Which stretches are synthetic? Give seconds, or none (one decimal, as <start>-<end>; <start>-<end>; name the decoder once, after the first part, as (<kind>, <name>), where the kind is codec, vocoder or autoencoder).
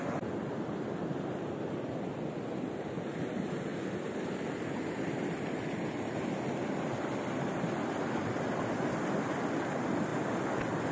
none